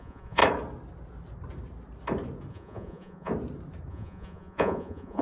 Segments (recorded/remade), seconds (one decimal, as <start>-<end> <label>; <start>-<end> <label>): 0.0-0.4 remade; 0.4-2.5 recorded; 2.5-3.3 remade; 3.3-3.9 recorded; 3.9-5.2 remade